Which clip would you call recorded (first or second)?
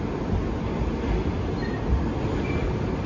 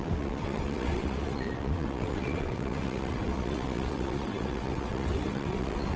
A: first